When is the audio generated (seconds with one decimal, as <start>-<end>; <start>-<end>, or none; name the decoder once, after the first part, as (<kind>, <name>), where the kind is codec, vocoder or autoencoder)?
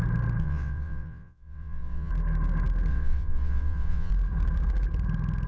0.4-2.1 (vocoder, WaveNeXt); 2.9-4.1